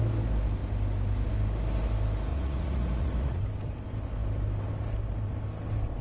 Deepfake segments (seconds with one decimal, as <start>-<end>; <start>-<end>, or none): 2.3-3.4